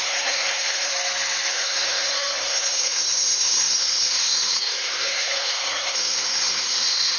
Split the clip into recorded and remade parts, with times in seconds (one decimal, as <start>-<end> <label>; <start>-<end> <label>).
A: 0.0-0.9 remade; 0.9-1.5 recorded; 1.5-7.2 remade